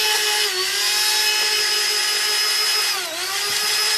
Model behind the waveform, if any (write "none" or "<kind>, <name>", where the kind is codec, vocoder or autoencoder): none